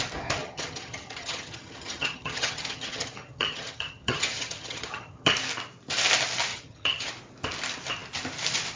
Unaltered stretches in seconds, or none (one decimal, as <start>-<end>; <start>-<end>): 0.0-0.4; 5.3-6.5; 7.1-8.8